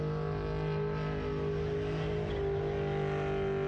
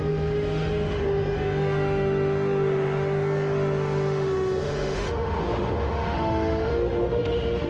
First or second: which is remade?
second